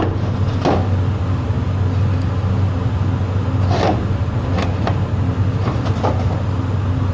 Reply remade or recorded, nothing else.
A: recorded